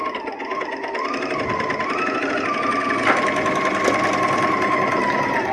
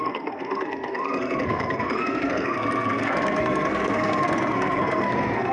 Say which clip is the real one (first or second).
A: first